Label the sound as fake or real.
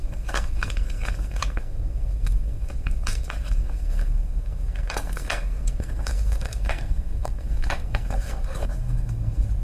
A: fake